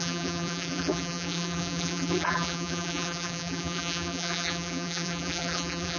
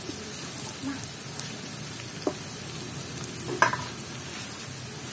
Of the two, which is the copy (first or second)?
first